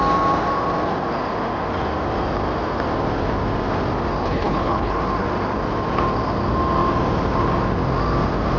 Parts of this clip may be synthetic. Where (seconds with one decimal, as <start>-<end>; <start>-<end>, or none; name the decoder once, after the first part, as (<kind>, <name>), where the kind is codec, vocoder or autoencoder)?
4.2-5.0 (codec, HILCodec)